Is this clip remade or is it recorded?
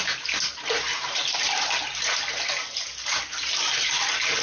recorded